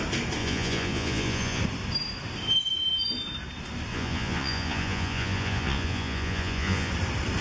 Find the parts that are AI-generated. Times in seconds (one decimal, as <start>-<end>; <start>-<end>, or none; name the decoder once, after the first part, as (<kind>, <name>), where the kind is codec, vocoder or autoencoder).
0.4-1.6 (vocoder, Vocos); 3.9-6.9